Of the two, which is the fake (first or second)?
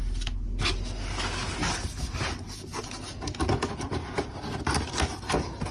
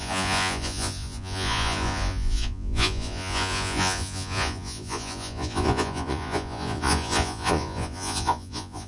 second